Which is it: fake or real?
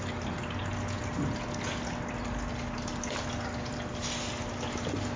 real